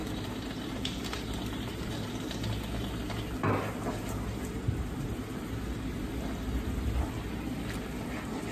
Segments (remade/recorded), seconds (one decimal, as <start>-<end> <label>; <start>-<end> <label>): 0.0-2.1 remade; 2.1-4.3 recorded; 4.3-5.1 remade; 5.1-8.5 recorded